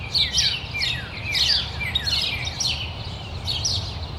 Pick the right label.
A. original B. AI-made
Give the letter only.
A